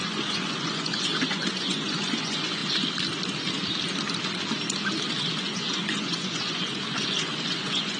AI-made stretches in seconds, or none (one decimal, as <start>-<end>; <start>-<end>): 0.0-2.6; 5.3-8.0